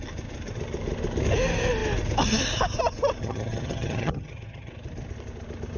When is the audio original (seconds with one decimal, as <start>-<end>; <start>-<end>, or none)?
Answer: 0.0-3.2; 4.7-5.8